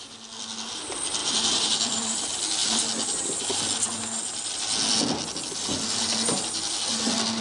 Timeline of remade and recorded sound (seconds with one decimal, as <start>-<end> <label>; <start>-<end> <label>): 0.0-1.2 recorded; 1.2-2.2 remade; 2.2-7.4 recorded